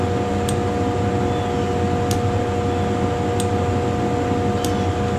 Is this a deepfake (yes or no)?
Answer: no